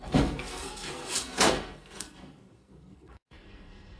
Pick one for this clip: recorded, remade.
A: remade